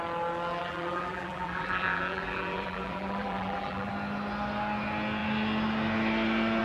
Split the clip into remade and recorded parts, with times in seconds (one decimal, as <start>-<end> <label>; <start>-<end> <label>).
0.0-0.6 recorded; 0.6-3.9 remade; 3.9-6.6 recorded